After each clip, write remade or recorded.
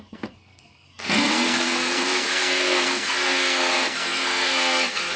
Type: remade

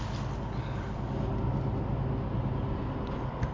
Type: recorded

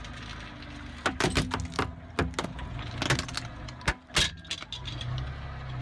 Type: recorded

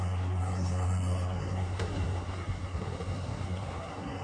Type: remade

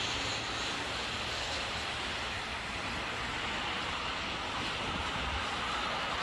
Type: recorded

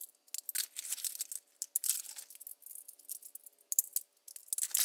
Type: recorded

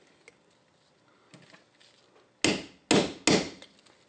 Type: recorded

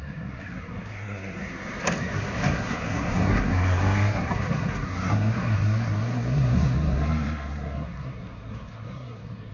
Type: remade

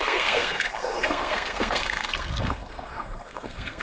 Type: remade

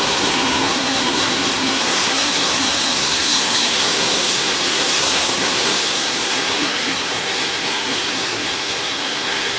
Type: remade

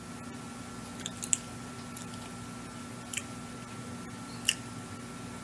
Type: recorded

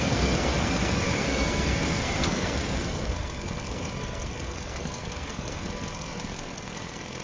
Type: remade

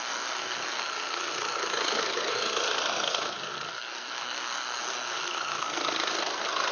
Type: remade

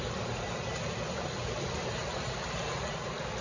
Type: recorded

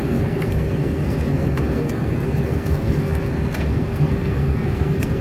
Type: remade